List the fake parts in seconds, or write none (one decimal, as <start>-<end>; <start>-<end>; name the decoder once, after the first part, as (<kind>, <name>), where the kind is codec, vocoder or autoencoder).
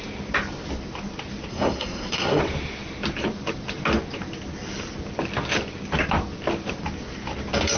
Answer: 1.5-2.4 (codec, SNAC)